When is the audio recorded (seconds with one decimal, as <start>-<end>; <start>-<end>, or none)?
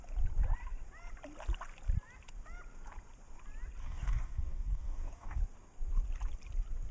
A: 0.0-3.8; 5.4-6.9